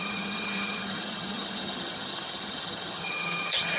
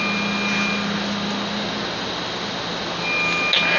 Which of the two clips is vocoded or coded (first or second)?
first